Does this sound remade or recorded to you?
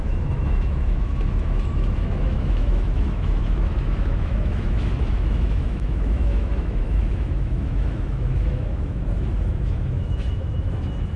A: remade